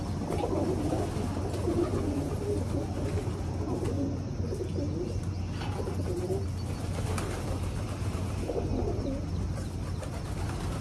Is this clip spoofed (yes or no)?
no